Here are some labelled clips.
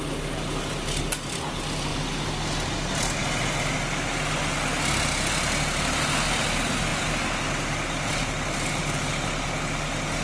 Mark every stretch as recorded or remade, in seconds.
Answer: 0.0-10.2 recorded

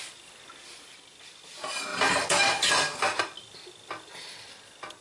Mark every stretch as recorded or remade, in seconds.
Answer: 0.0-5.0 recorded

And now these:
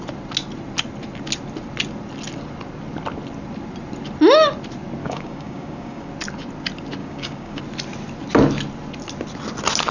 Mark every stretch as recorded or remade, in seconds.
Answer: 0.0-5.0 recorded; 5.0-6.1 remade; 6.1-7.0 recorded; 7.0-7.6 remade; 7.6-9.9 recorded

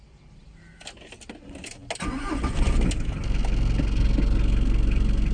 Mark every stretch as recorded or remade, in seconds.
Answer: 0.0-5.3 recorded

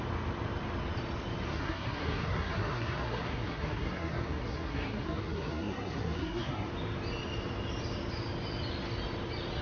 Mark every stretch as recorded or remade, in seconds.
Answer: 0.0-1.5 recorded; 1.5-6.7 remade; 6.7-9.6 recorded